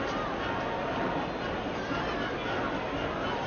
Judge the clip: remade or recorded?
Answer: recorded